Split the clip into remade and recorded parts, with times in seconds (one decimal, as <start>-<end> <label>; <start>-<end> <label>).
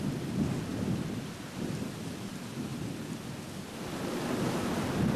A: 0.0-0.7 recorded; 0.7-1.8 remade; 1.8-5.2 recorded